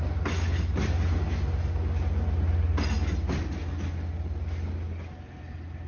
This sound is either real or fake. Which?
real